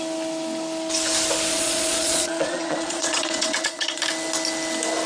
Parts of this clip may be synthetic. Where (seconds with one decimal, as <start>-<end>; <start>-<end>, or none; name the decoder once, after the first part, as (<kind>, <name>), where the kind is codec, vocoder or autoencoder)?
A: 1.5-4.0 (vocoder, Vocos)